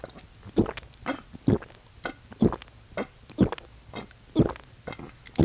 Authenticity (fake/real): real